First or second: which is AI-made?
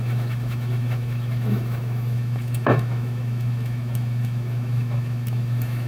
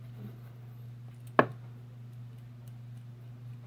first